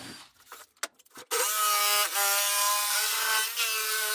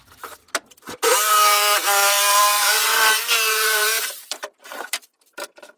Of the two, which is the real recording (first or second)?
first